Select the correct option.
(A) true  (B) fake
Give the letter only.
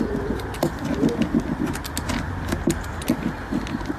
A